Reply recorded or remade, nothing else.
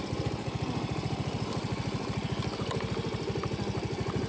recorded